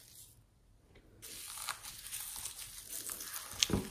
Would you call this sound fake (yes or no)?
no